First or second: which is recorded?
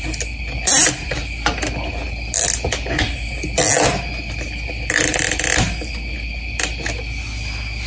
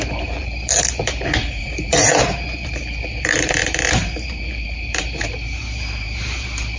first